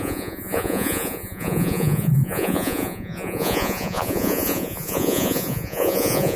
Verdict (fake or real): fake